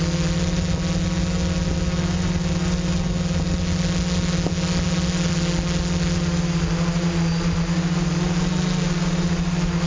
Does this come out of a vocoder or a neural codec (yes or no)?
no